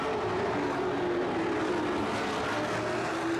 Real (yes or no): yes